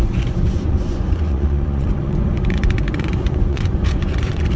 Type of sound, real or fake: fake